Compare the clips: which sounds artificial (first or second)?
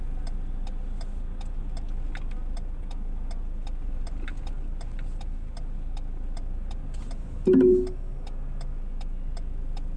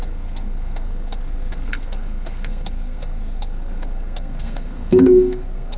second